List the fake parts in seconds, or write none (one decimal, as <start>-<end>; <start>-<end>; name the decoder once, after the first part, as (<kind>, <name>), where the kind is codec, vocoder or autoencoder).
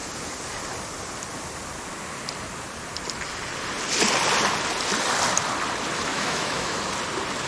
6.1-6.8 (autoencoder, DAC-VAE)